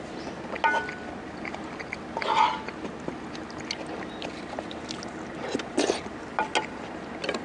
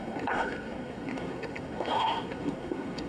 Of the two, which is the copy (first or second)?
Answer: second